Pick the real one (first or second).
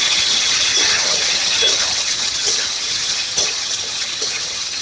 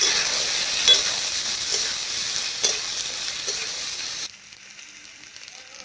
second